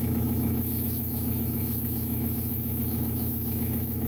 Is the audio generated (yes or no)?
yes